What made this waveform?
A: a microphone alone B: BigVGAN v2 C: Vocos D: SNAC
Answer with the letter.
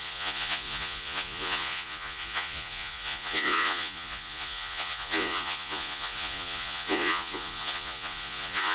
C